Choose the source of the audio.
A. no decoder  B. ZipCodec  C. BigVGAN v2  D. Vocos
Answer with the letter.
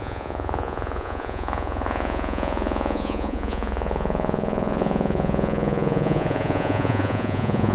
D